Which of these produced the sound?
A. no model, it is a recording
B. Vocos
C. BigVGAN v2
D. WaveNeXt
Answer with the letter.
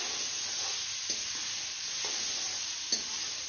A